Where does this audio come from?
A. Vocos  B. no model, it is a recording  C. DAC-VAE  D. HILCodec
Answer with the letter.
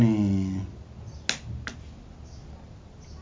B